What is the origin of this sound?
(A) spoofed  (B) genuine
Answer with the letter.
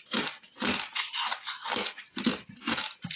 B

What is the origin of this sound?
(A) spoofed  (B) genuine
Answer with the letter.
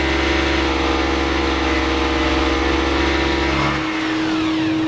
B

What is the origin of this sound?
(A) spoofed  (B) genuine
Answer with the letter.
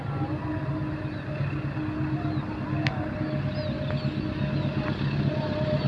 B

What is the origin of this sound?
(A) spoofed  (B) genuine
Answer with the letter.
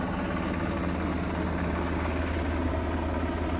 B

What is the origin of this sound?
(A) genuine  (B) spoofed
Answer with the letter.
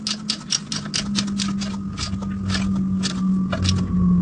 A